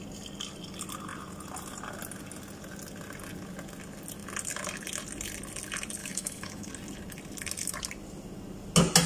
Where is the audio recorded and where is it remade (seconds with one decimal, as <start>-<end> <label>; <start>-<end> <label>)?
0.0-6.0 recorded; 6.0-6.7 remade; 6.7-9.1 recorded